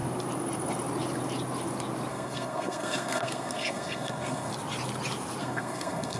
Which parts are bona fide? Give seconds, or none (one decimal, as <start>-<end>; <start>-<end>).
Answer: 0.0-2.1; 4.5-5.4